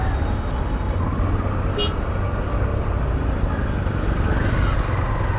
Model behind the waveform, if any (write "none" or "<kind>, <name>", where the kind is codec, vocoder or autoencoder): none